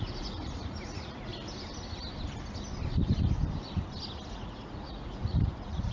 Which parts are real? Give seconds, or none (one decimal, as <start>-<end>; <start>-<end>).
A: 1.3-4.3